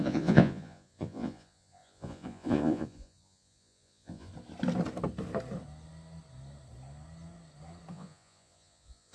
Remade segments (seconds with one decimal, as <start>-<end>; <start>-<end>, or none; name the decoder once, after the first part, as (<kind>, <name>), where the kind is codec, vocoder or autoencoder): 0.0-4.3 (vocoder, Vocos); 7.9-9.1